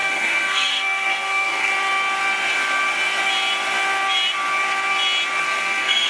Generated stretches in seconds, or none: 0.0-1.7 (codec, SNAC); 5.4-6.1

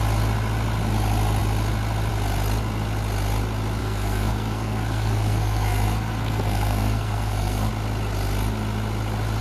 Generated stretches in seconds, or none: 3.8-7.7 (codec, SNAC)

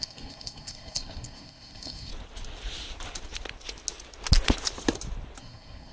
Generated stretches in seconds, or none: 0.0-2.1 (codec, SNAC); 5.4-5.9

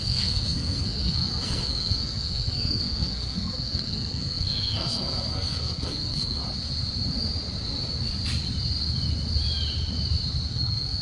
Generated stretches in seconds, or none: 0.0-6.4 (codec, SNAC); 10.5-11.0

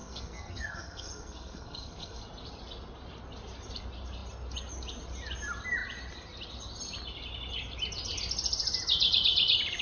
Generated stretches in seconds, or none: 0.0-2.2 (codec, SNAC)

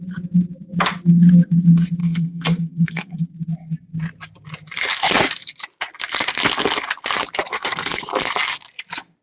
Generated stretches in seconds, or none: 2.0-3.2 (codec, SNAC); 7.5-8.0